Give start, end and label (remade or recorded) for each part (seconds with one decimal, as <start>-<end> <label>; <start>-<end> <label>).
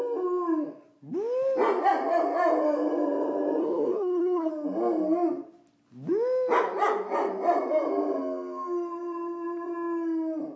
0.0-3.6 recorded; 3.6-4.5 remade; 4.5-10.6 recorded